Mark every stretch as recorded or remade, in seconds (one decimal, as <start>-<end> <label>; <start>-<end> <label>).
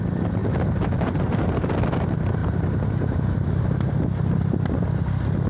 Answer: 0.0-0.4 recorded; 0.4-1.7 remade; 1.7-2.4 recorded; 2.4-3.9 remade; 3.9-5.5 recorded